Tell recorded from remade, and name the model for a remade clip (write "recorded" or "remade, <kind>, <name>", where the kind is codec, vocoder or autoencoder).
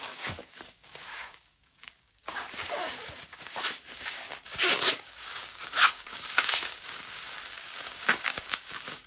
remade, codec, DAC